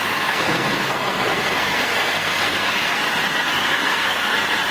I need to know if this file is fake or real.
fake